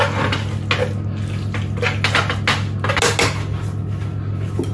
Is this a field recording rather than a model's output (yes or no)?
yes